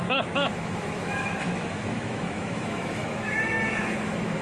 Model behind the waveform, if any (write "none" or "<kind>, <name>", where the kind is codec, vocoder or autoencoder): autoencoder, DAC-VAE